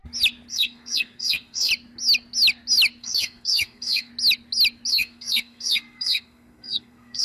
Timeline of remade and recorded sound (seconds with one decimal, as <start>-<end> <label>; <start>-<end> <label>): 0.0-0.5 recorded; 0.5-1.7 remade; 1.7-3.0 recorded; 3.0-4.1 remade; 4.1-4.9 recorded; 4.9-7.2 remade